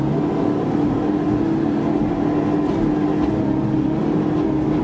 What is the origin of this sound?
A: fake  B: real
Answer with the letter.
B